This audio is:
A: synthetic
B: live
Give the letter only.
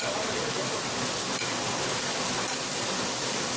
B